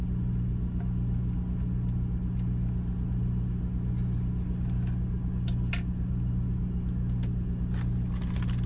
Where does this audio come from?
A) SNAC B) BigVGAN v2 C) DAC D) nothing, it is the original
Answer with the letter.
D